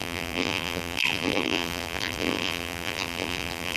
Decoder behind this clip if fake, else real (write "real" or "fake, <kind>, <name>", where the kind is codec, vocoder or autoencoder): fake, vocoder, BigVGAN v2